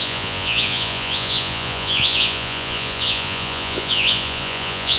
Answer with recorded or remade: remade